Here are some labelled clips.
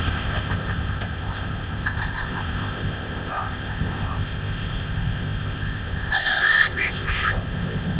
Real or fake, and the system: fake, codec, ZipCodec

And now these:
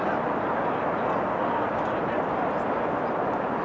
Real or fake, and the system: real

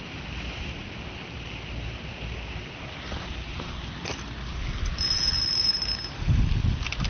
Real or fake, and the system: real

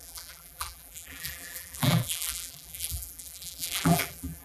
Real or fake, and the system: fake, vocoder, BigVGAN v2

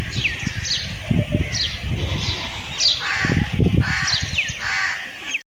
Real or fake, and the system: real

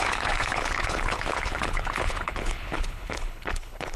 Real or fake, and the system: fake, codec, HILCodec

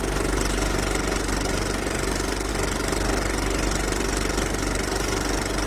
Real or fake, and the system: real